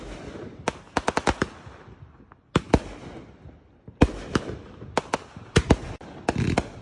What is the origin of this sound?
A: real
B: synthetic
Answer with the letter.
A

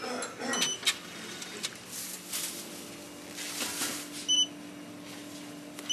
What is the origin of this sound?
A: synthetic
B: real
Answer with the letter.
B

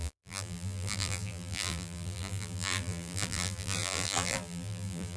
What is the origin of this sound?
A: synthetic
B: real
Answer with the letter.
A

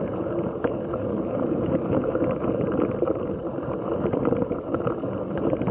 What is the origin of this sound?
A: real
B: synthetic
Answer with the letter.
B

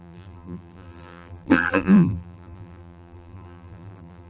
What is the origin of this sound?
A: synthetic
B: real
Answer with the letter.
A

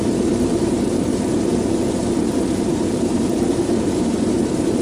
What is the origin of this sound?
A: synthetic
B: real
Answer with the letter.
A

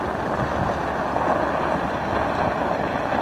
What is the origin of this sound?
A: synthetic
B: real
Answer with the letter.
B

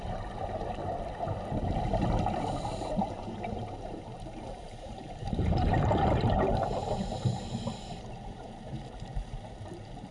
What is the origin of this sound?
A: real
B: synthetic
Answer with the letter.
B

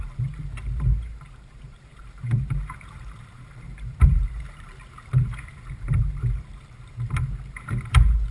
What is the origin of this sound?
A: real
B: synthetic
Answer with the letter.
B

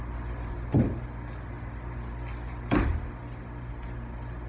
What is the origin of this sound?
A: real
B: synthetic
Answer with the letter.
A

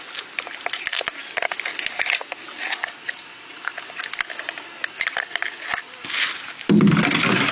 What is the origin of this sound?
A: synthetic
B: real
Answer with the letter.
B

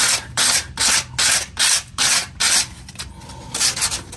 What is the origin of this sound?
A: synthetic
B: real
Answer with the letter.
B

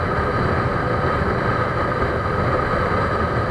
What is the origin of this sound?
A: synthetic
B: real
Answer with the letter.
B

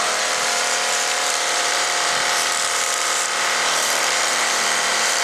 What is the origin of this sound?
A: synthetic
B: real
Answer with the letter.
A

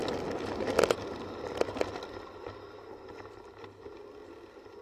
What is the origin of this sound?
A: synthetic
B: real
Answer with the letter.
B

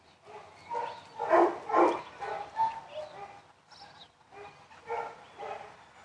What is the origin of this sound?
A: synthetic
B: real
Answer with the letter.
B